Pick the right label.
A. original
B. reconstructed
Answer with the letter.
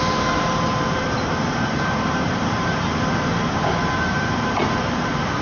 B